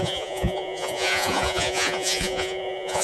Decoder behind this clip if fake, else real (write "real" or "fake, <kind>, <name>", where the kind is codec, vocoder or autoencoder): fake, vocoder, Vocos